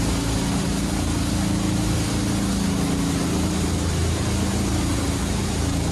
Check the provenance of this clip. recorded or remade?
recorded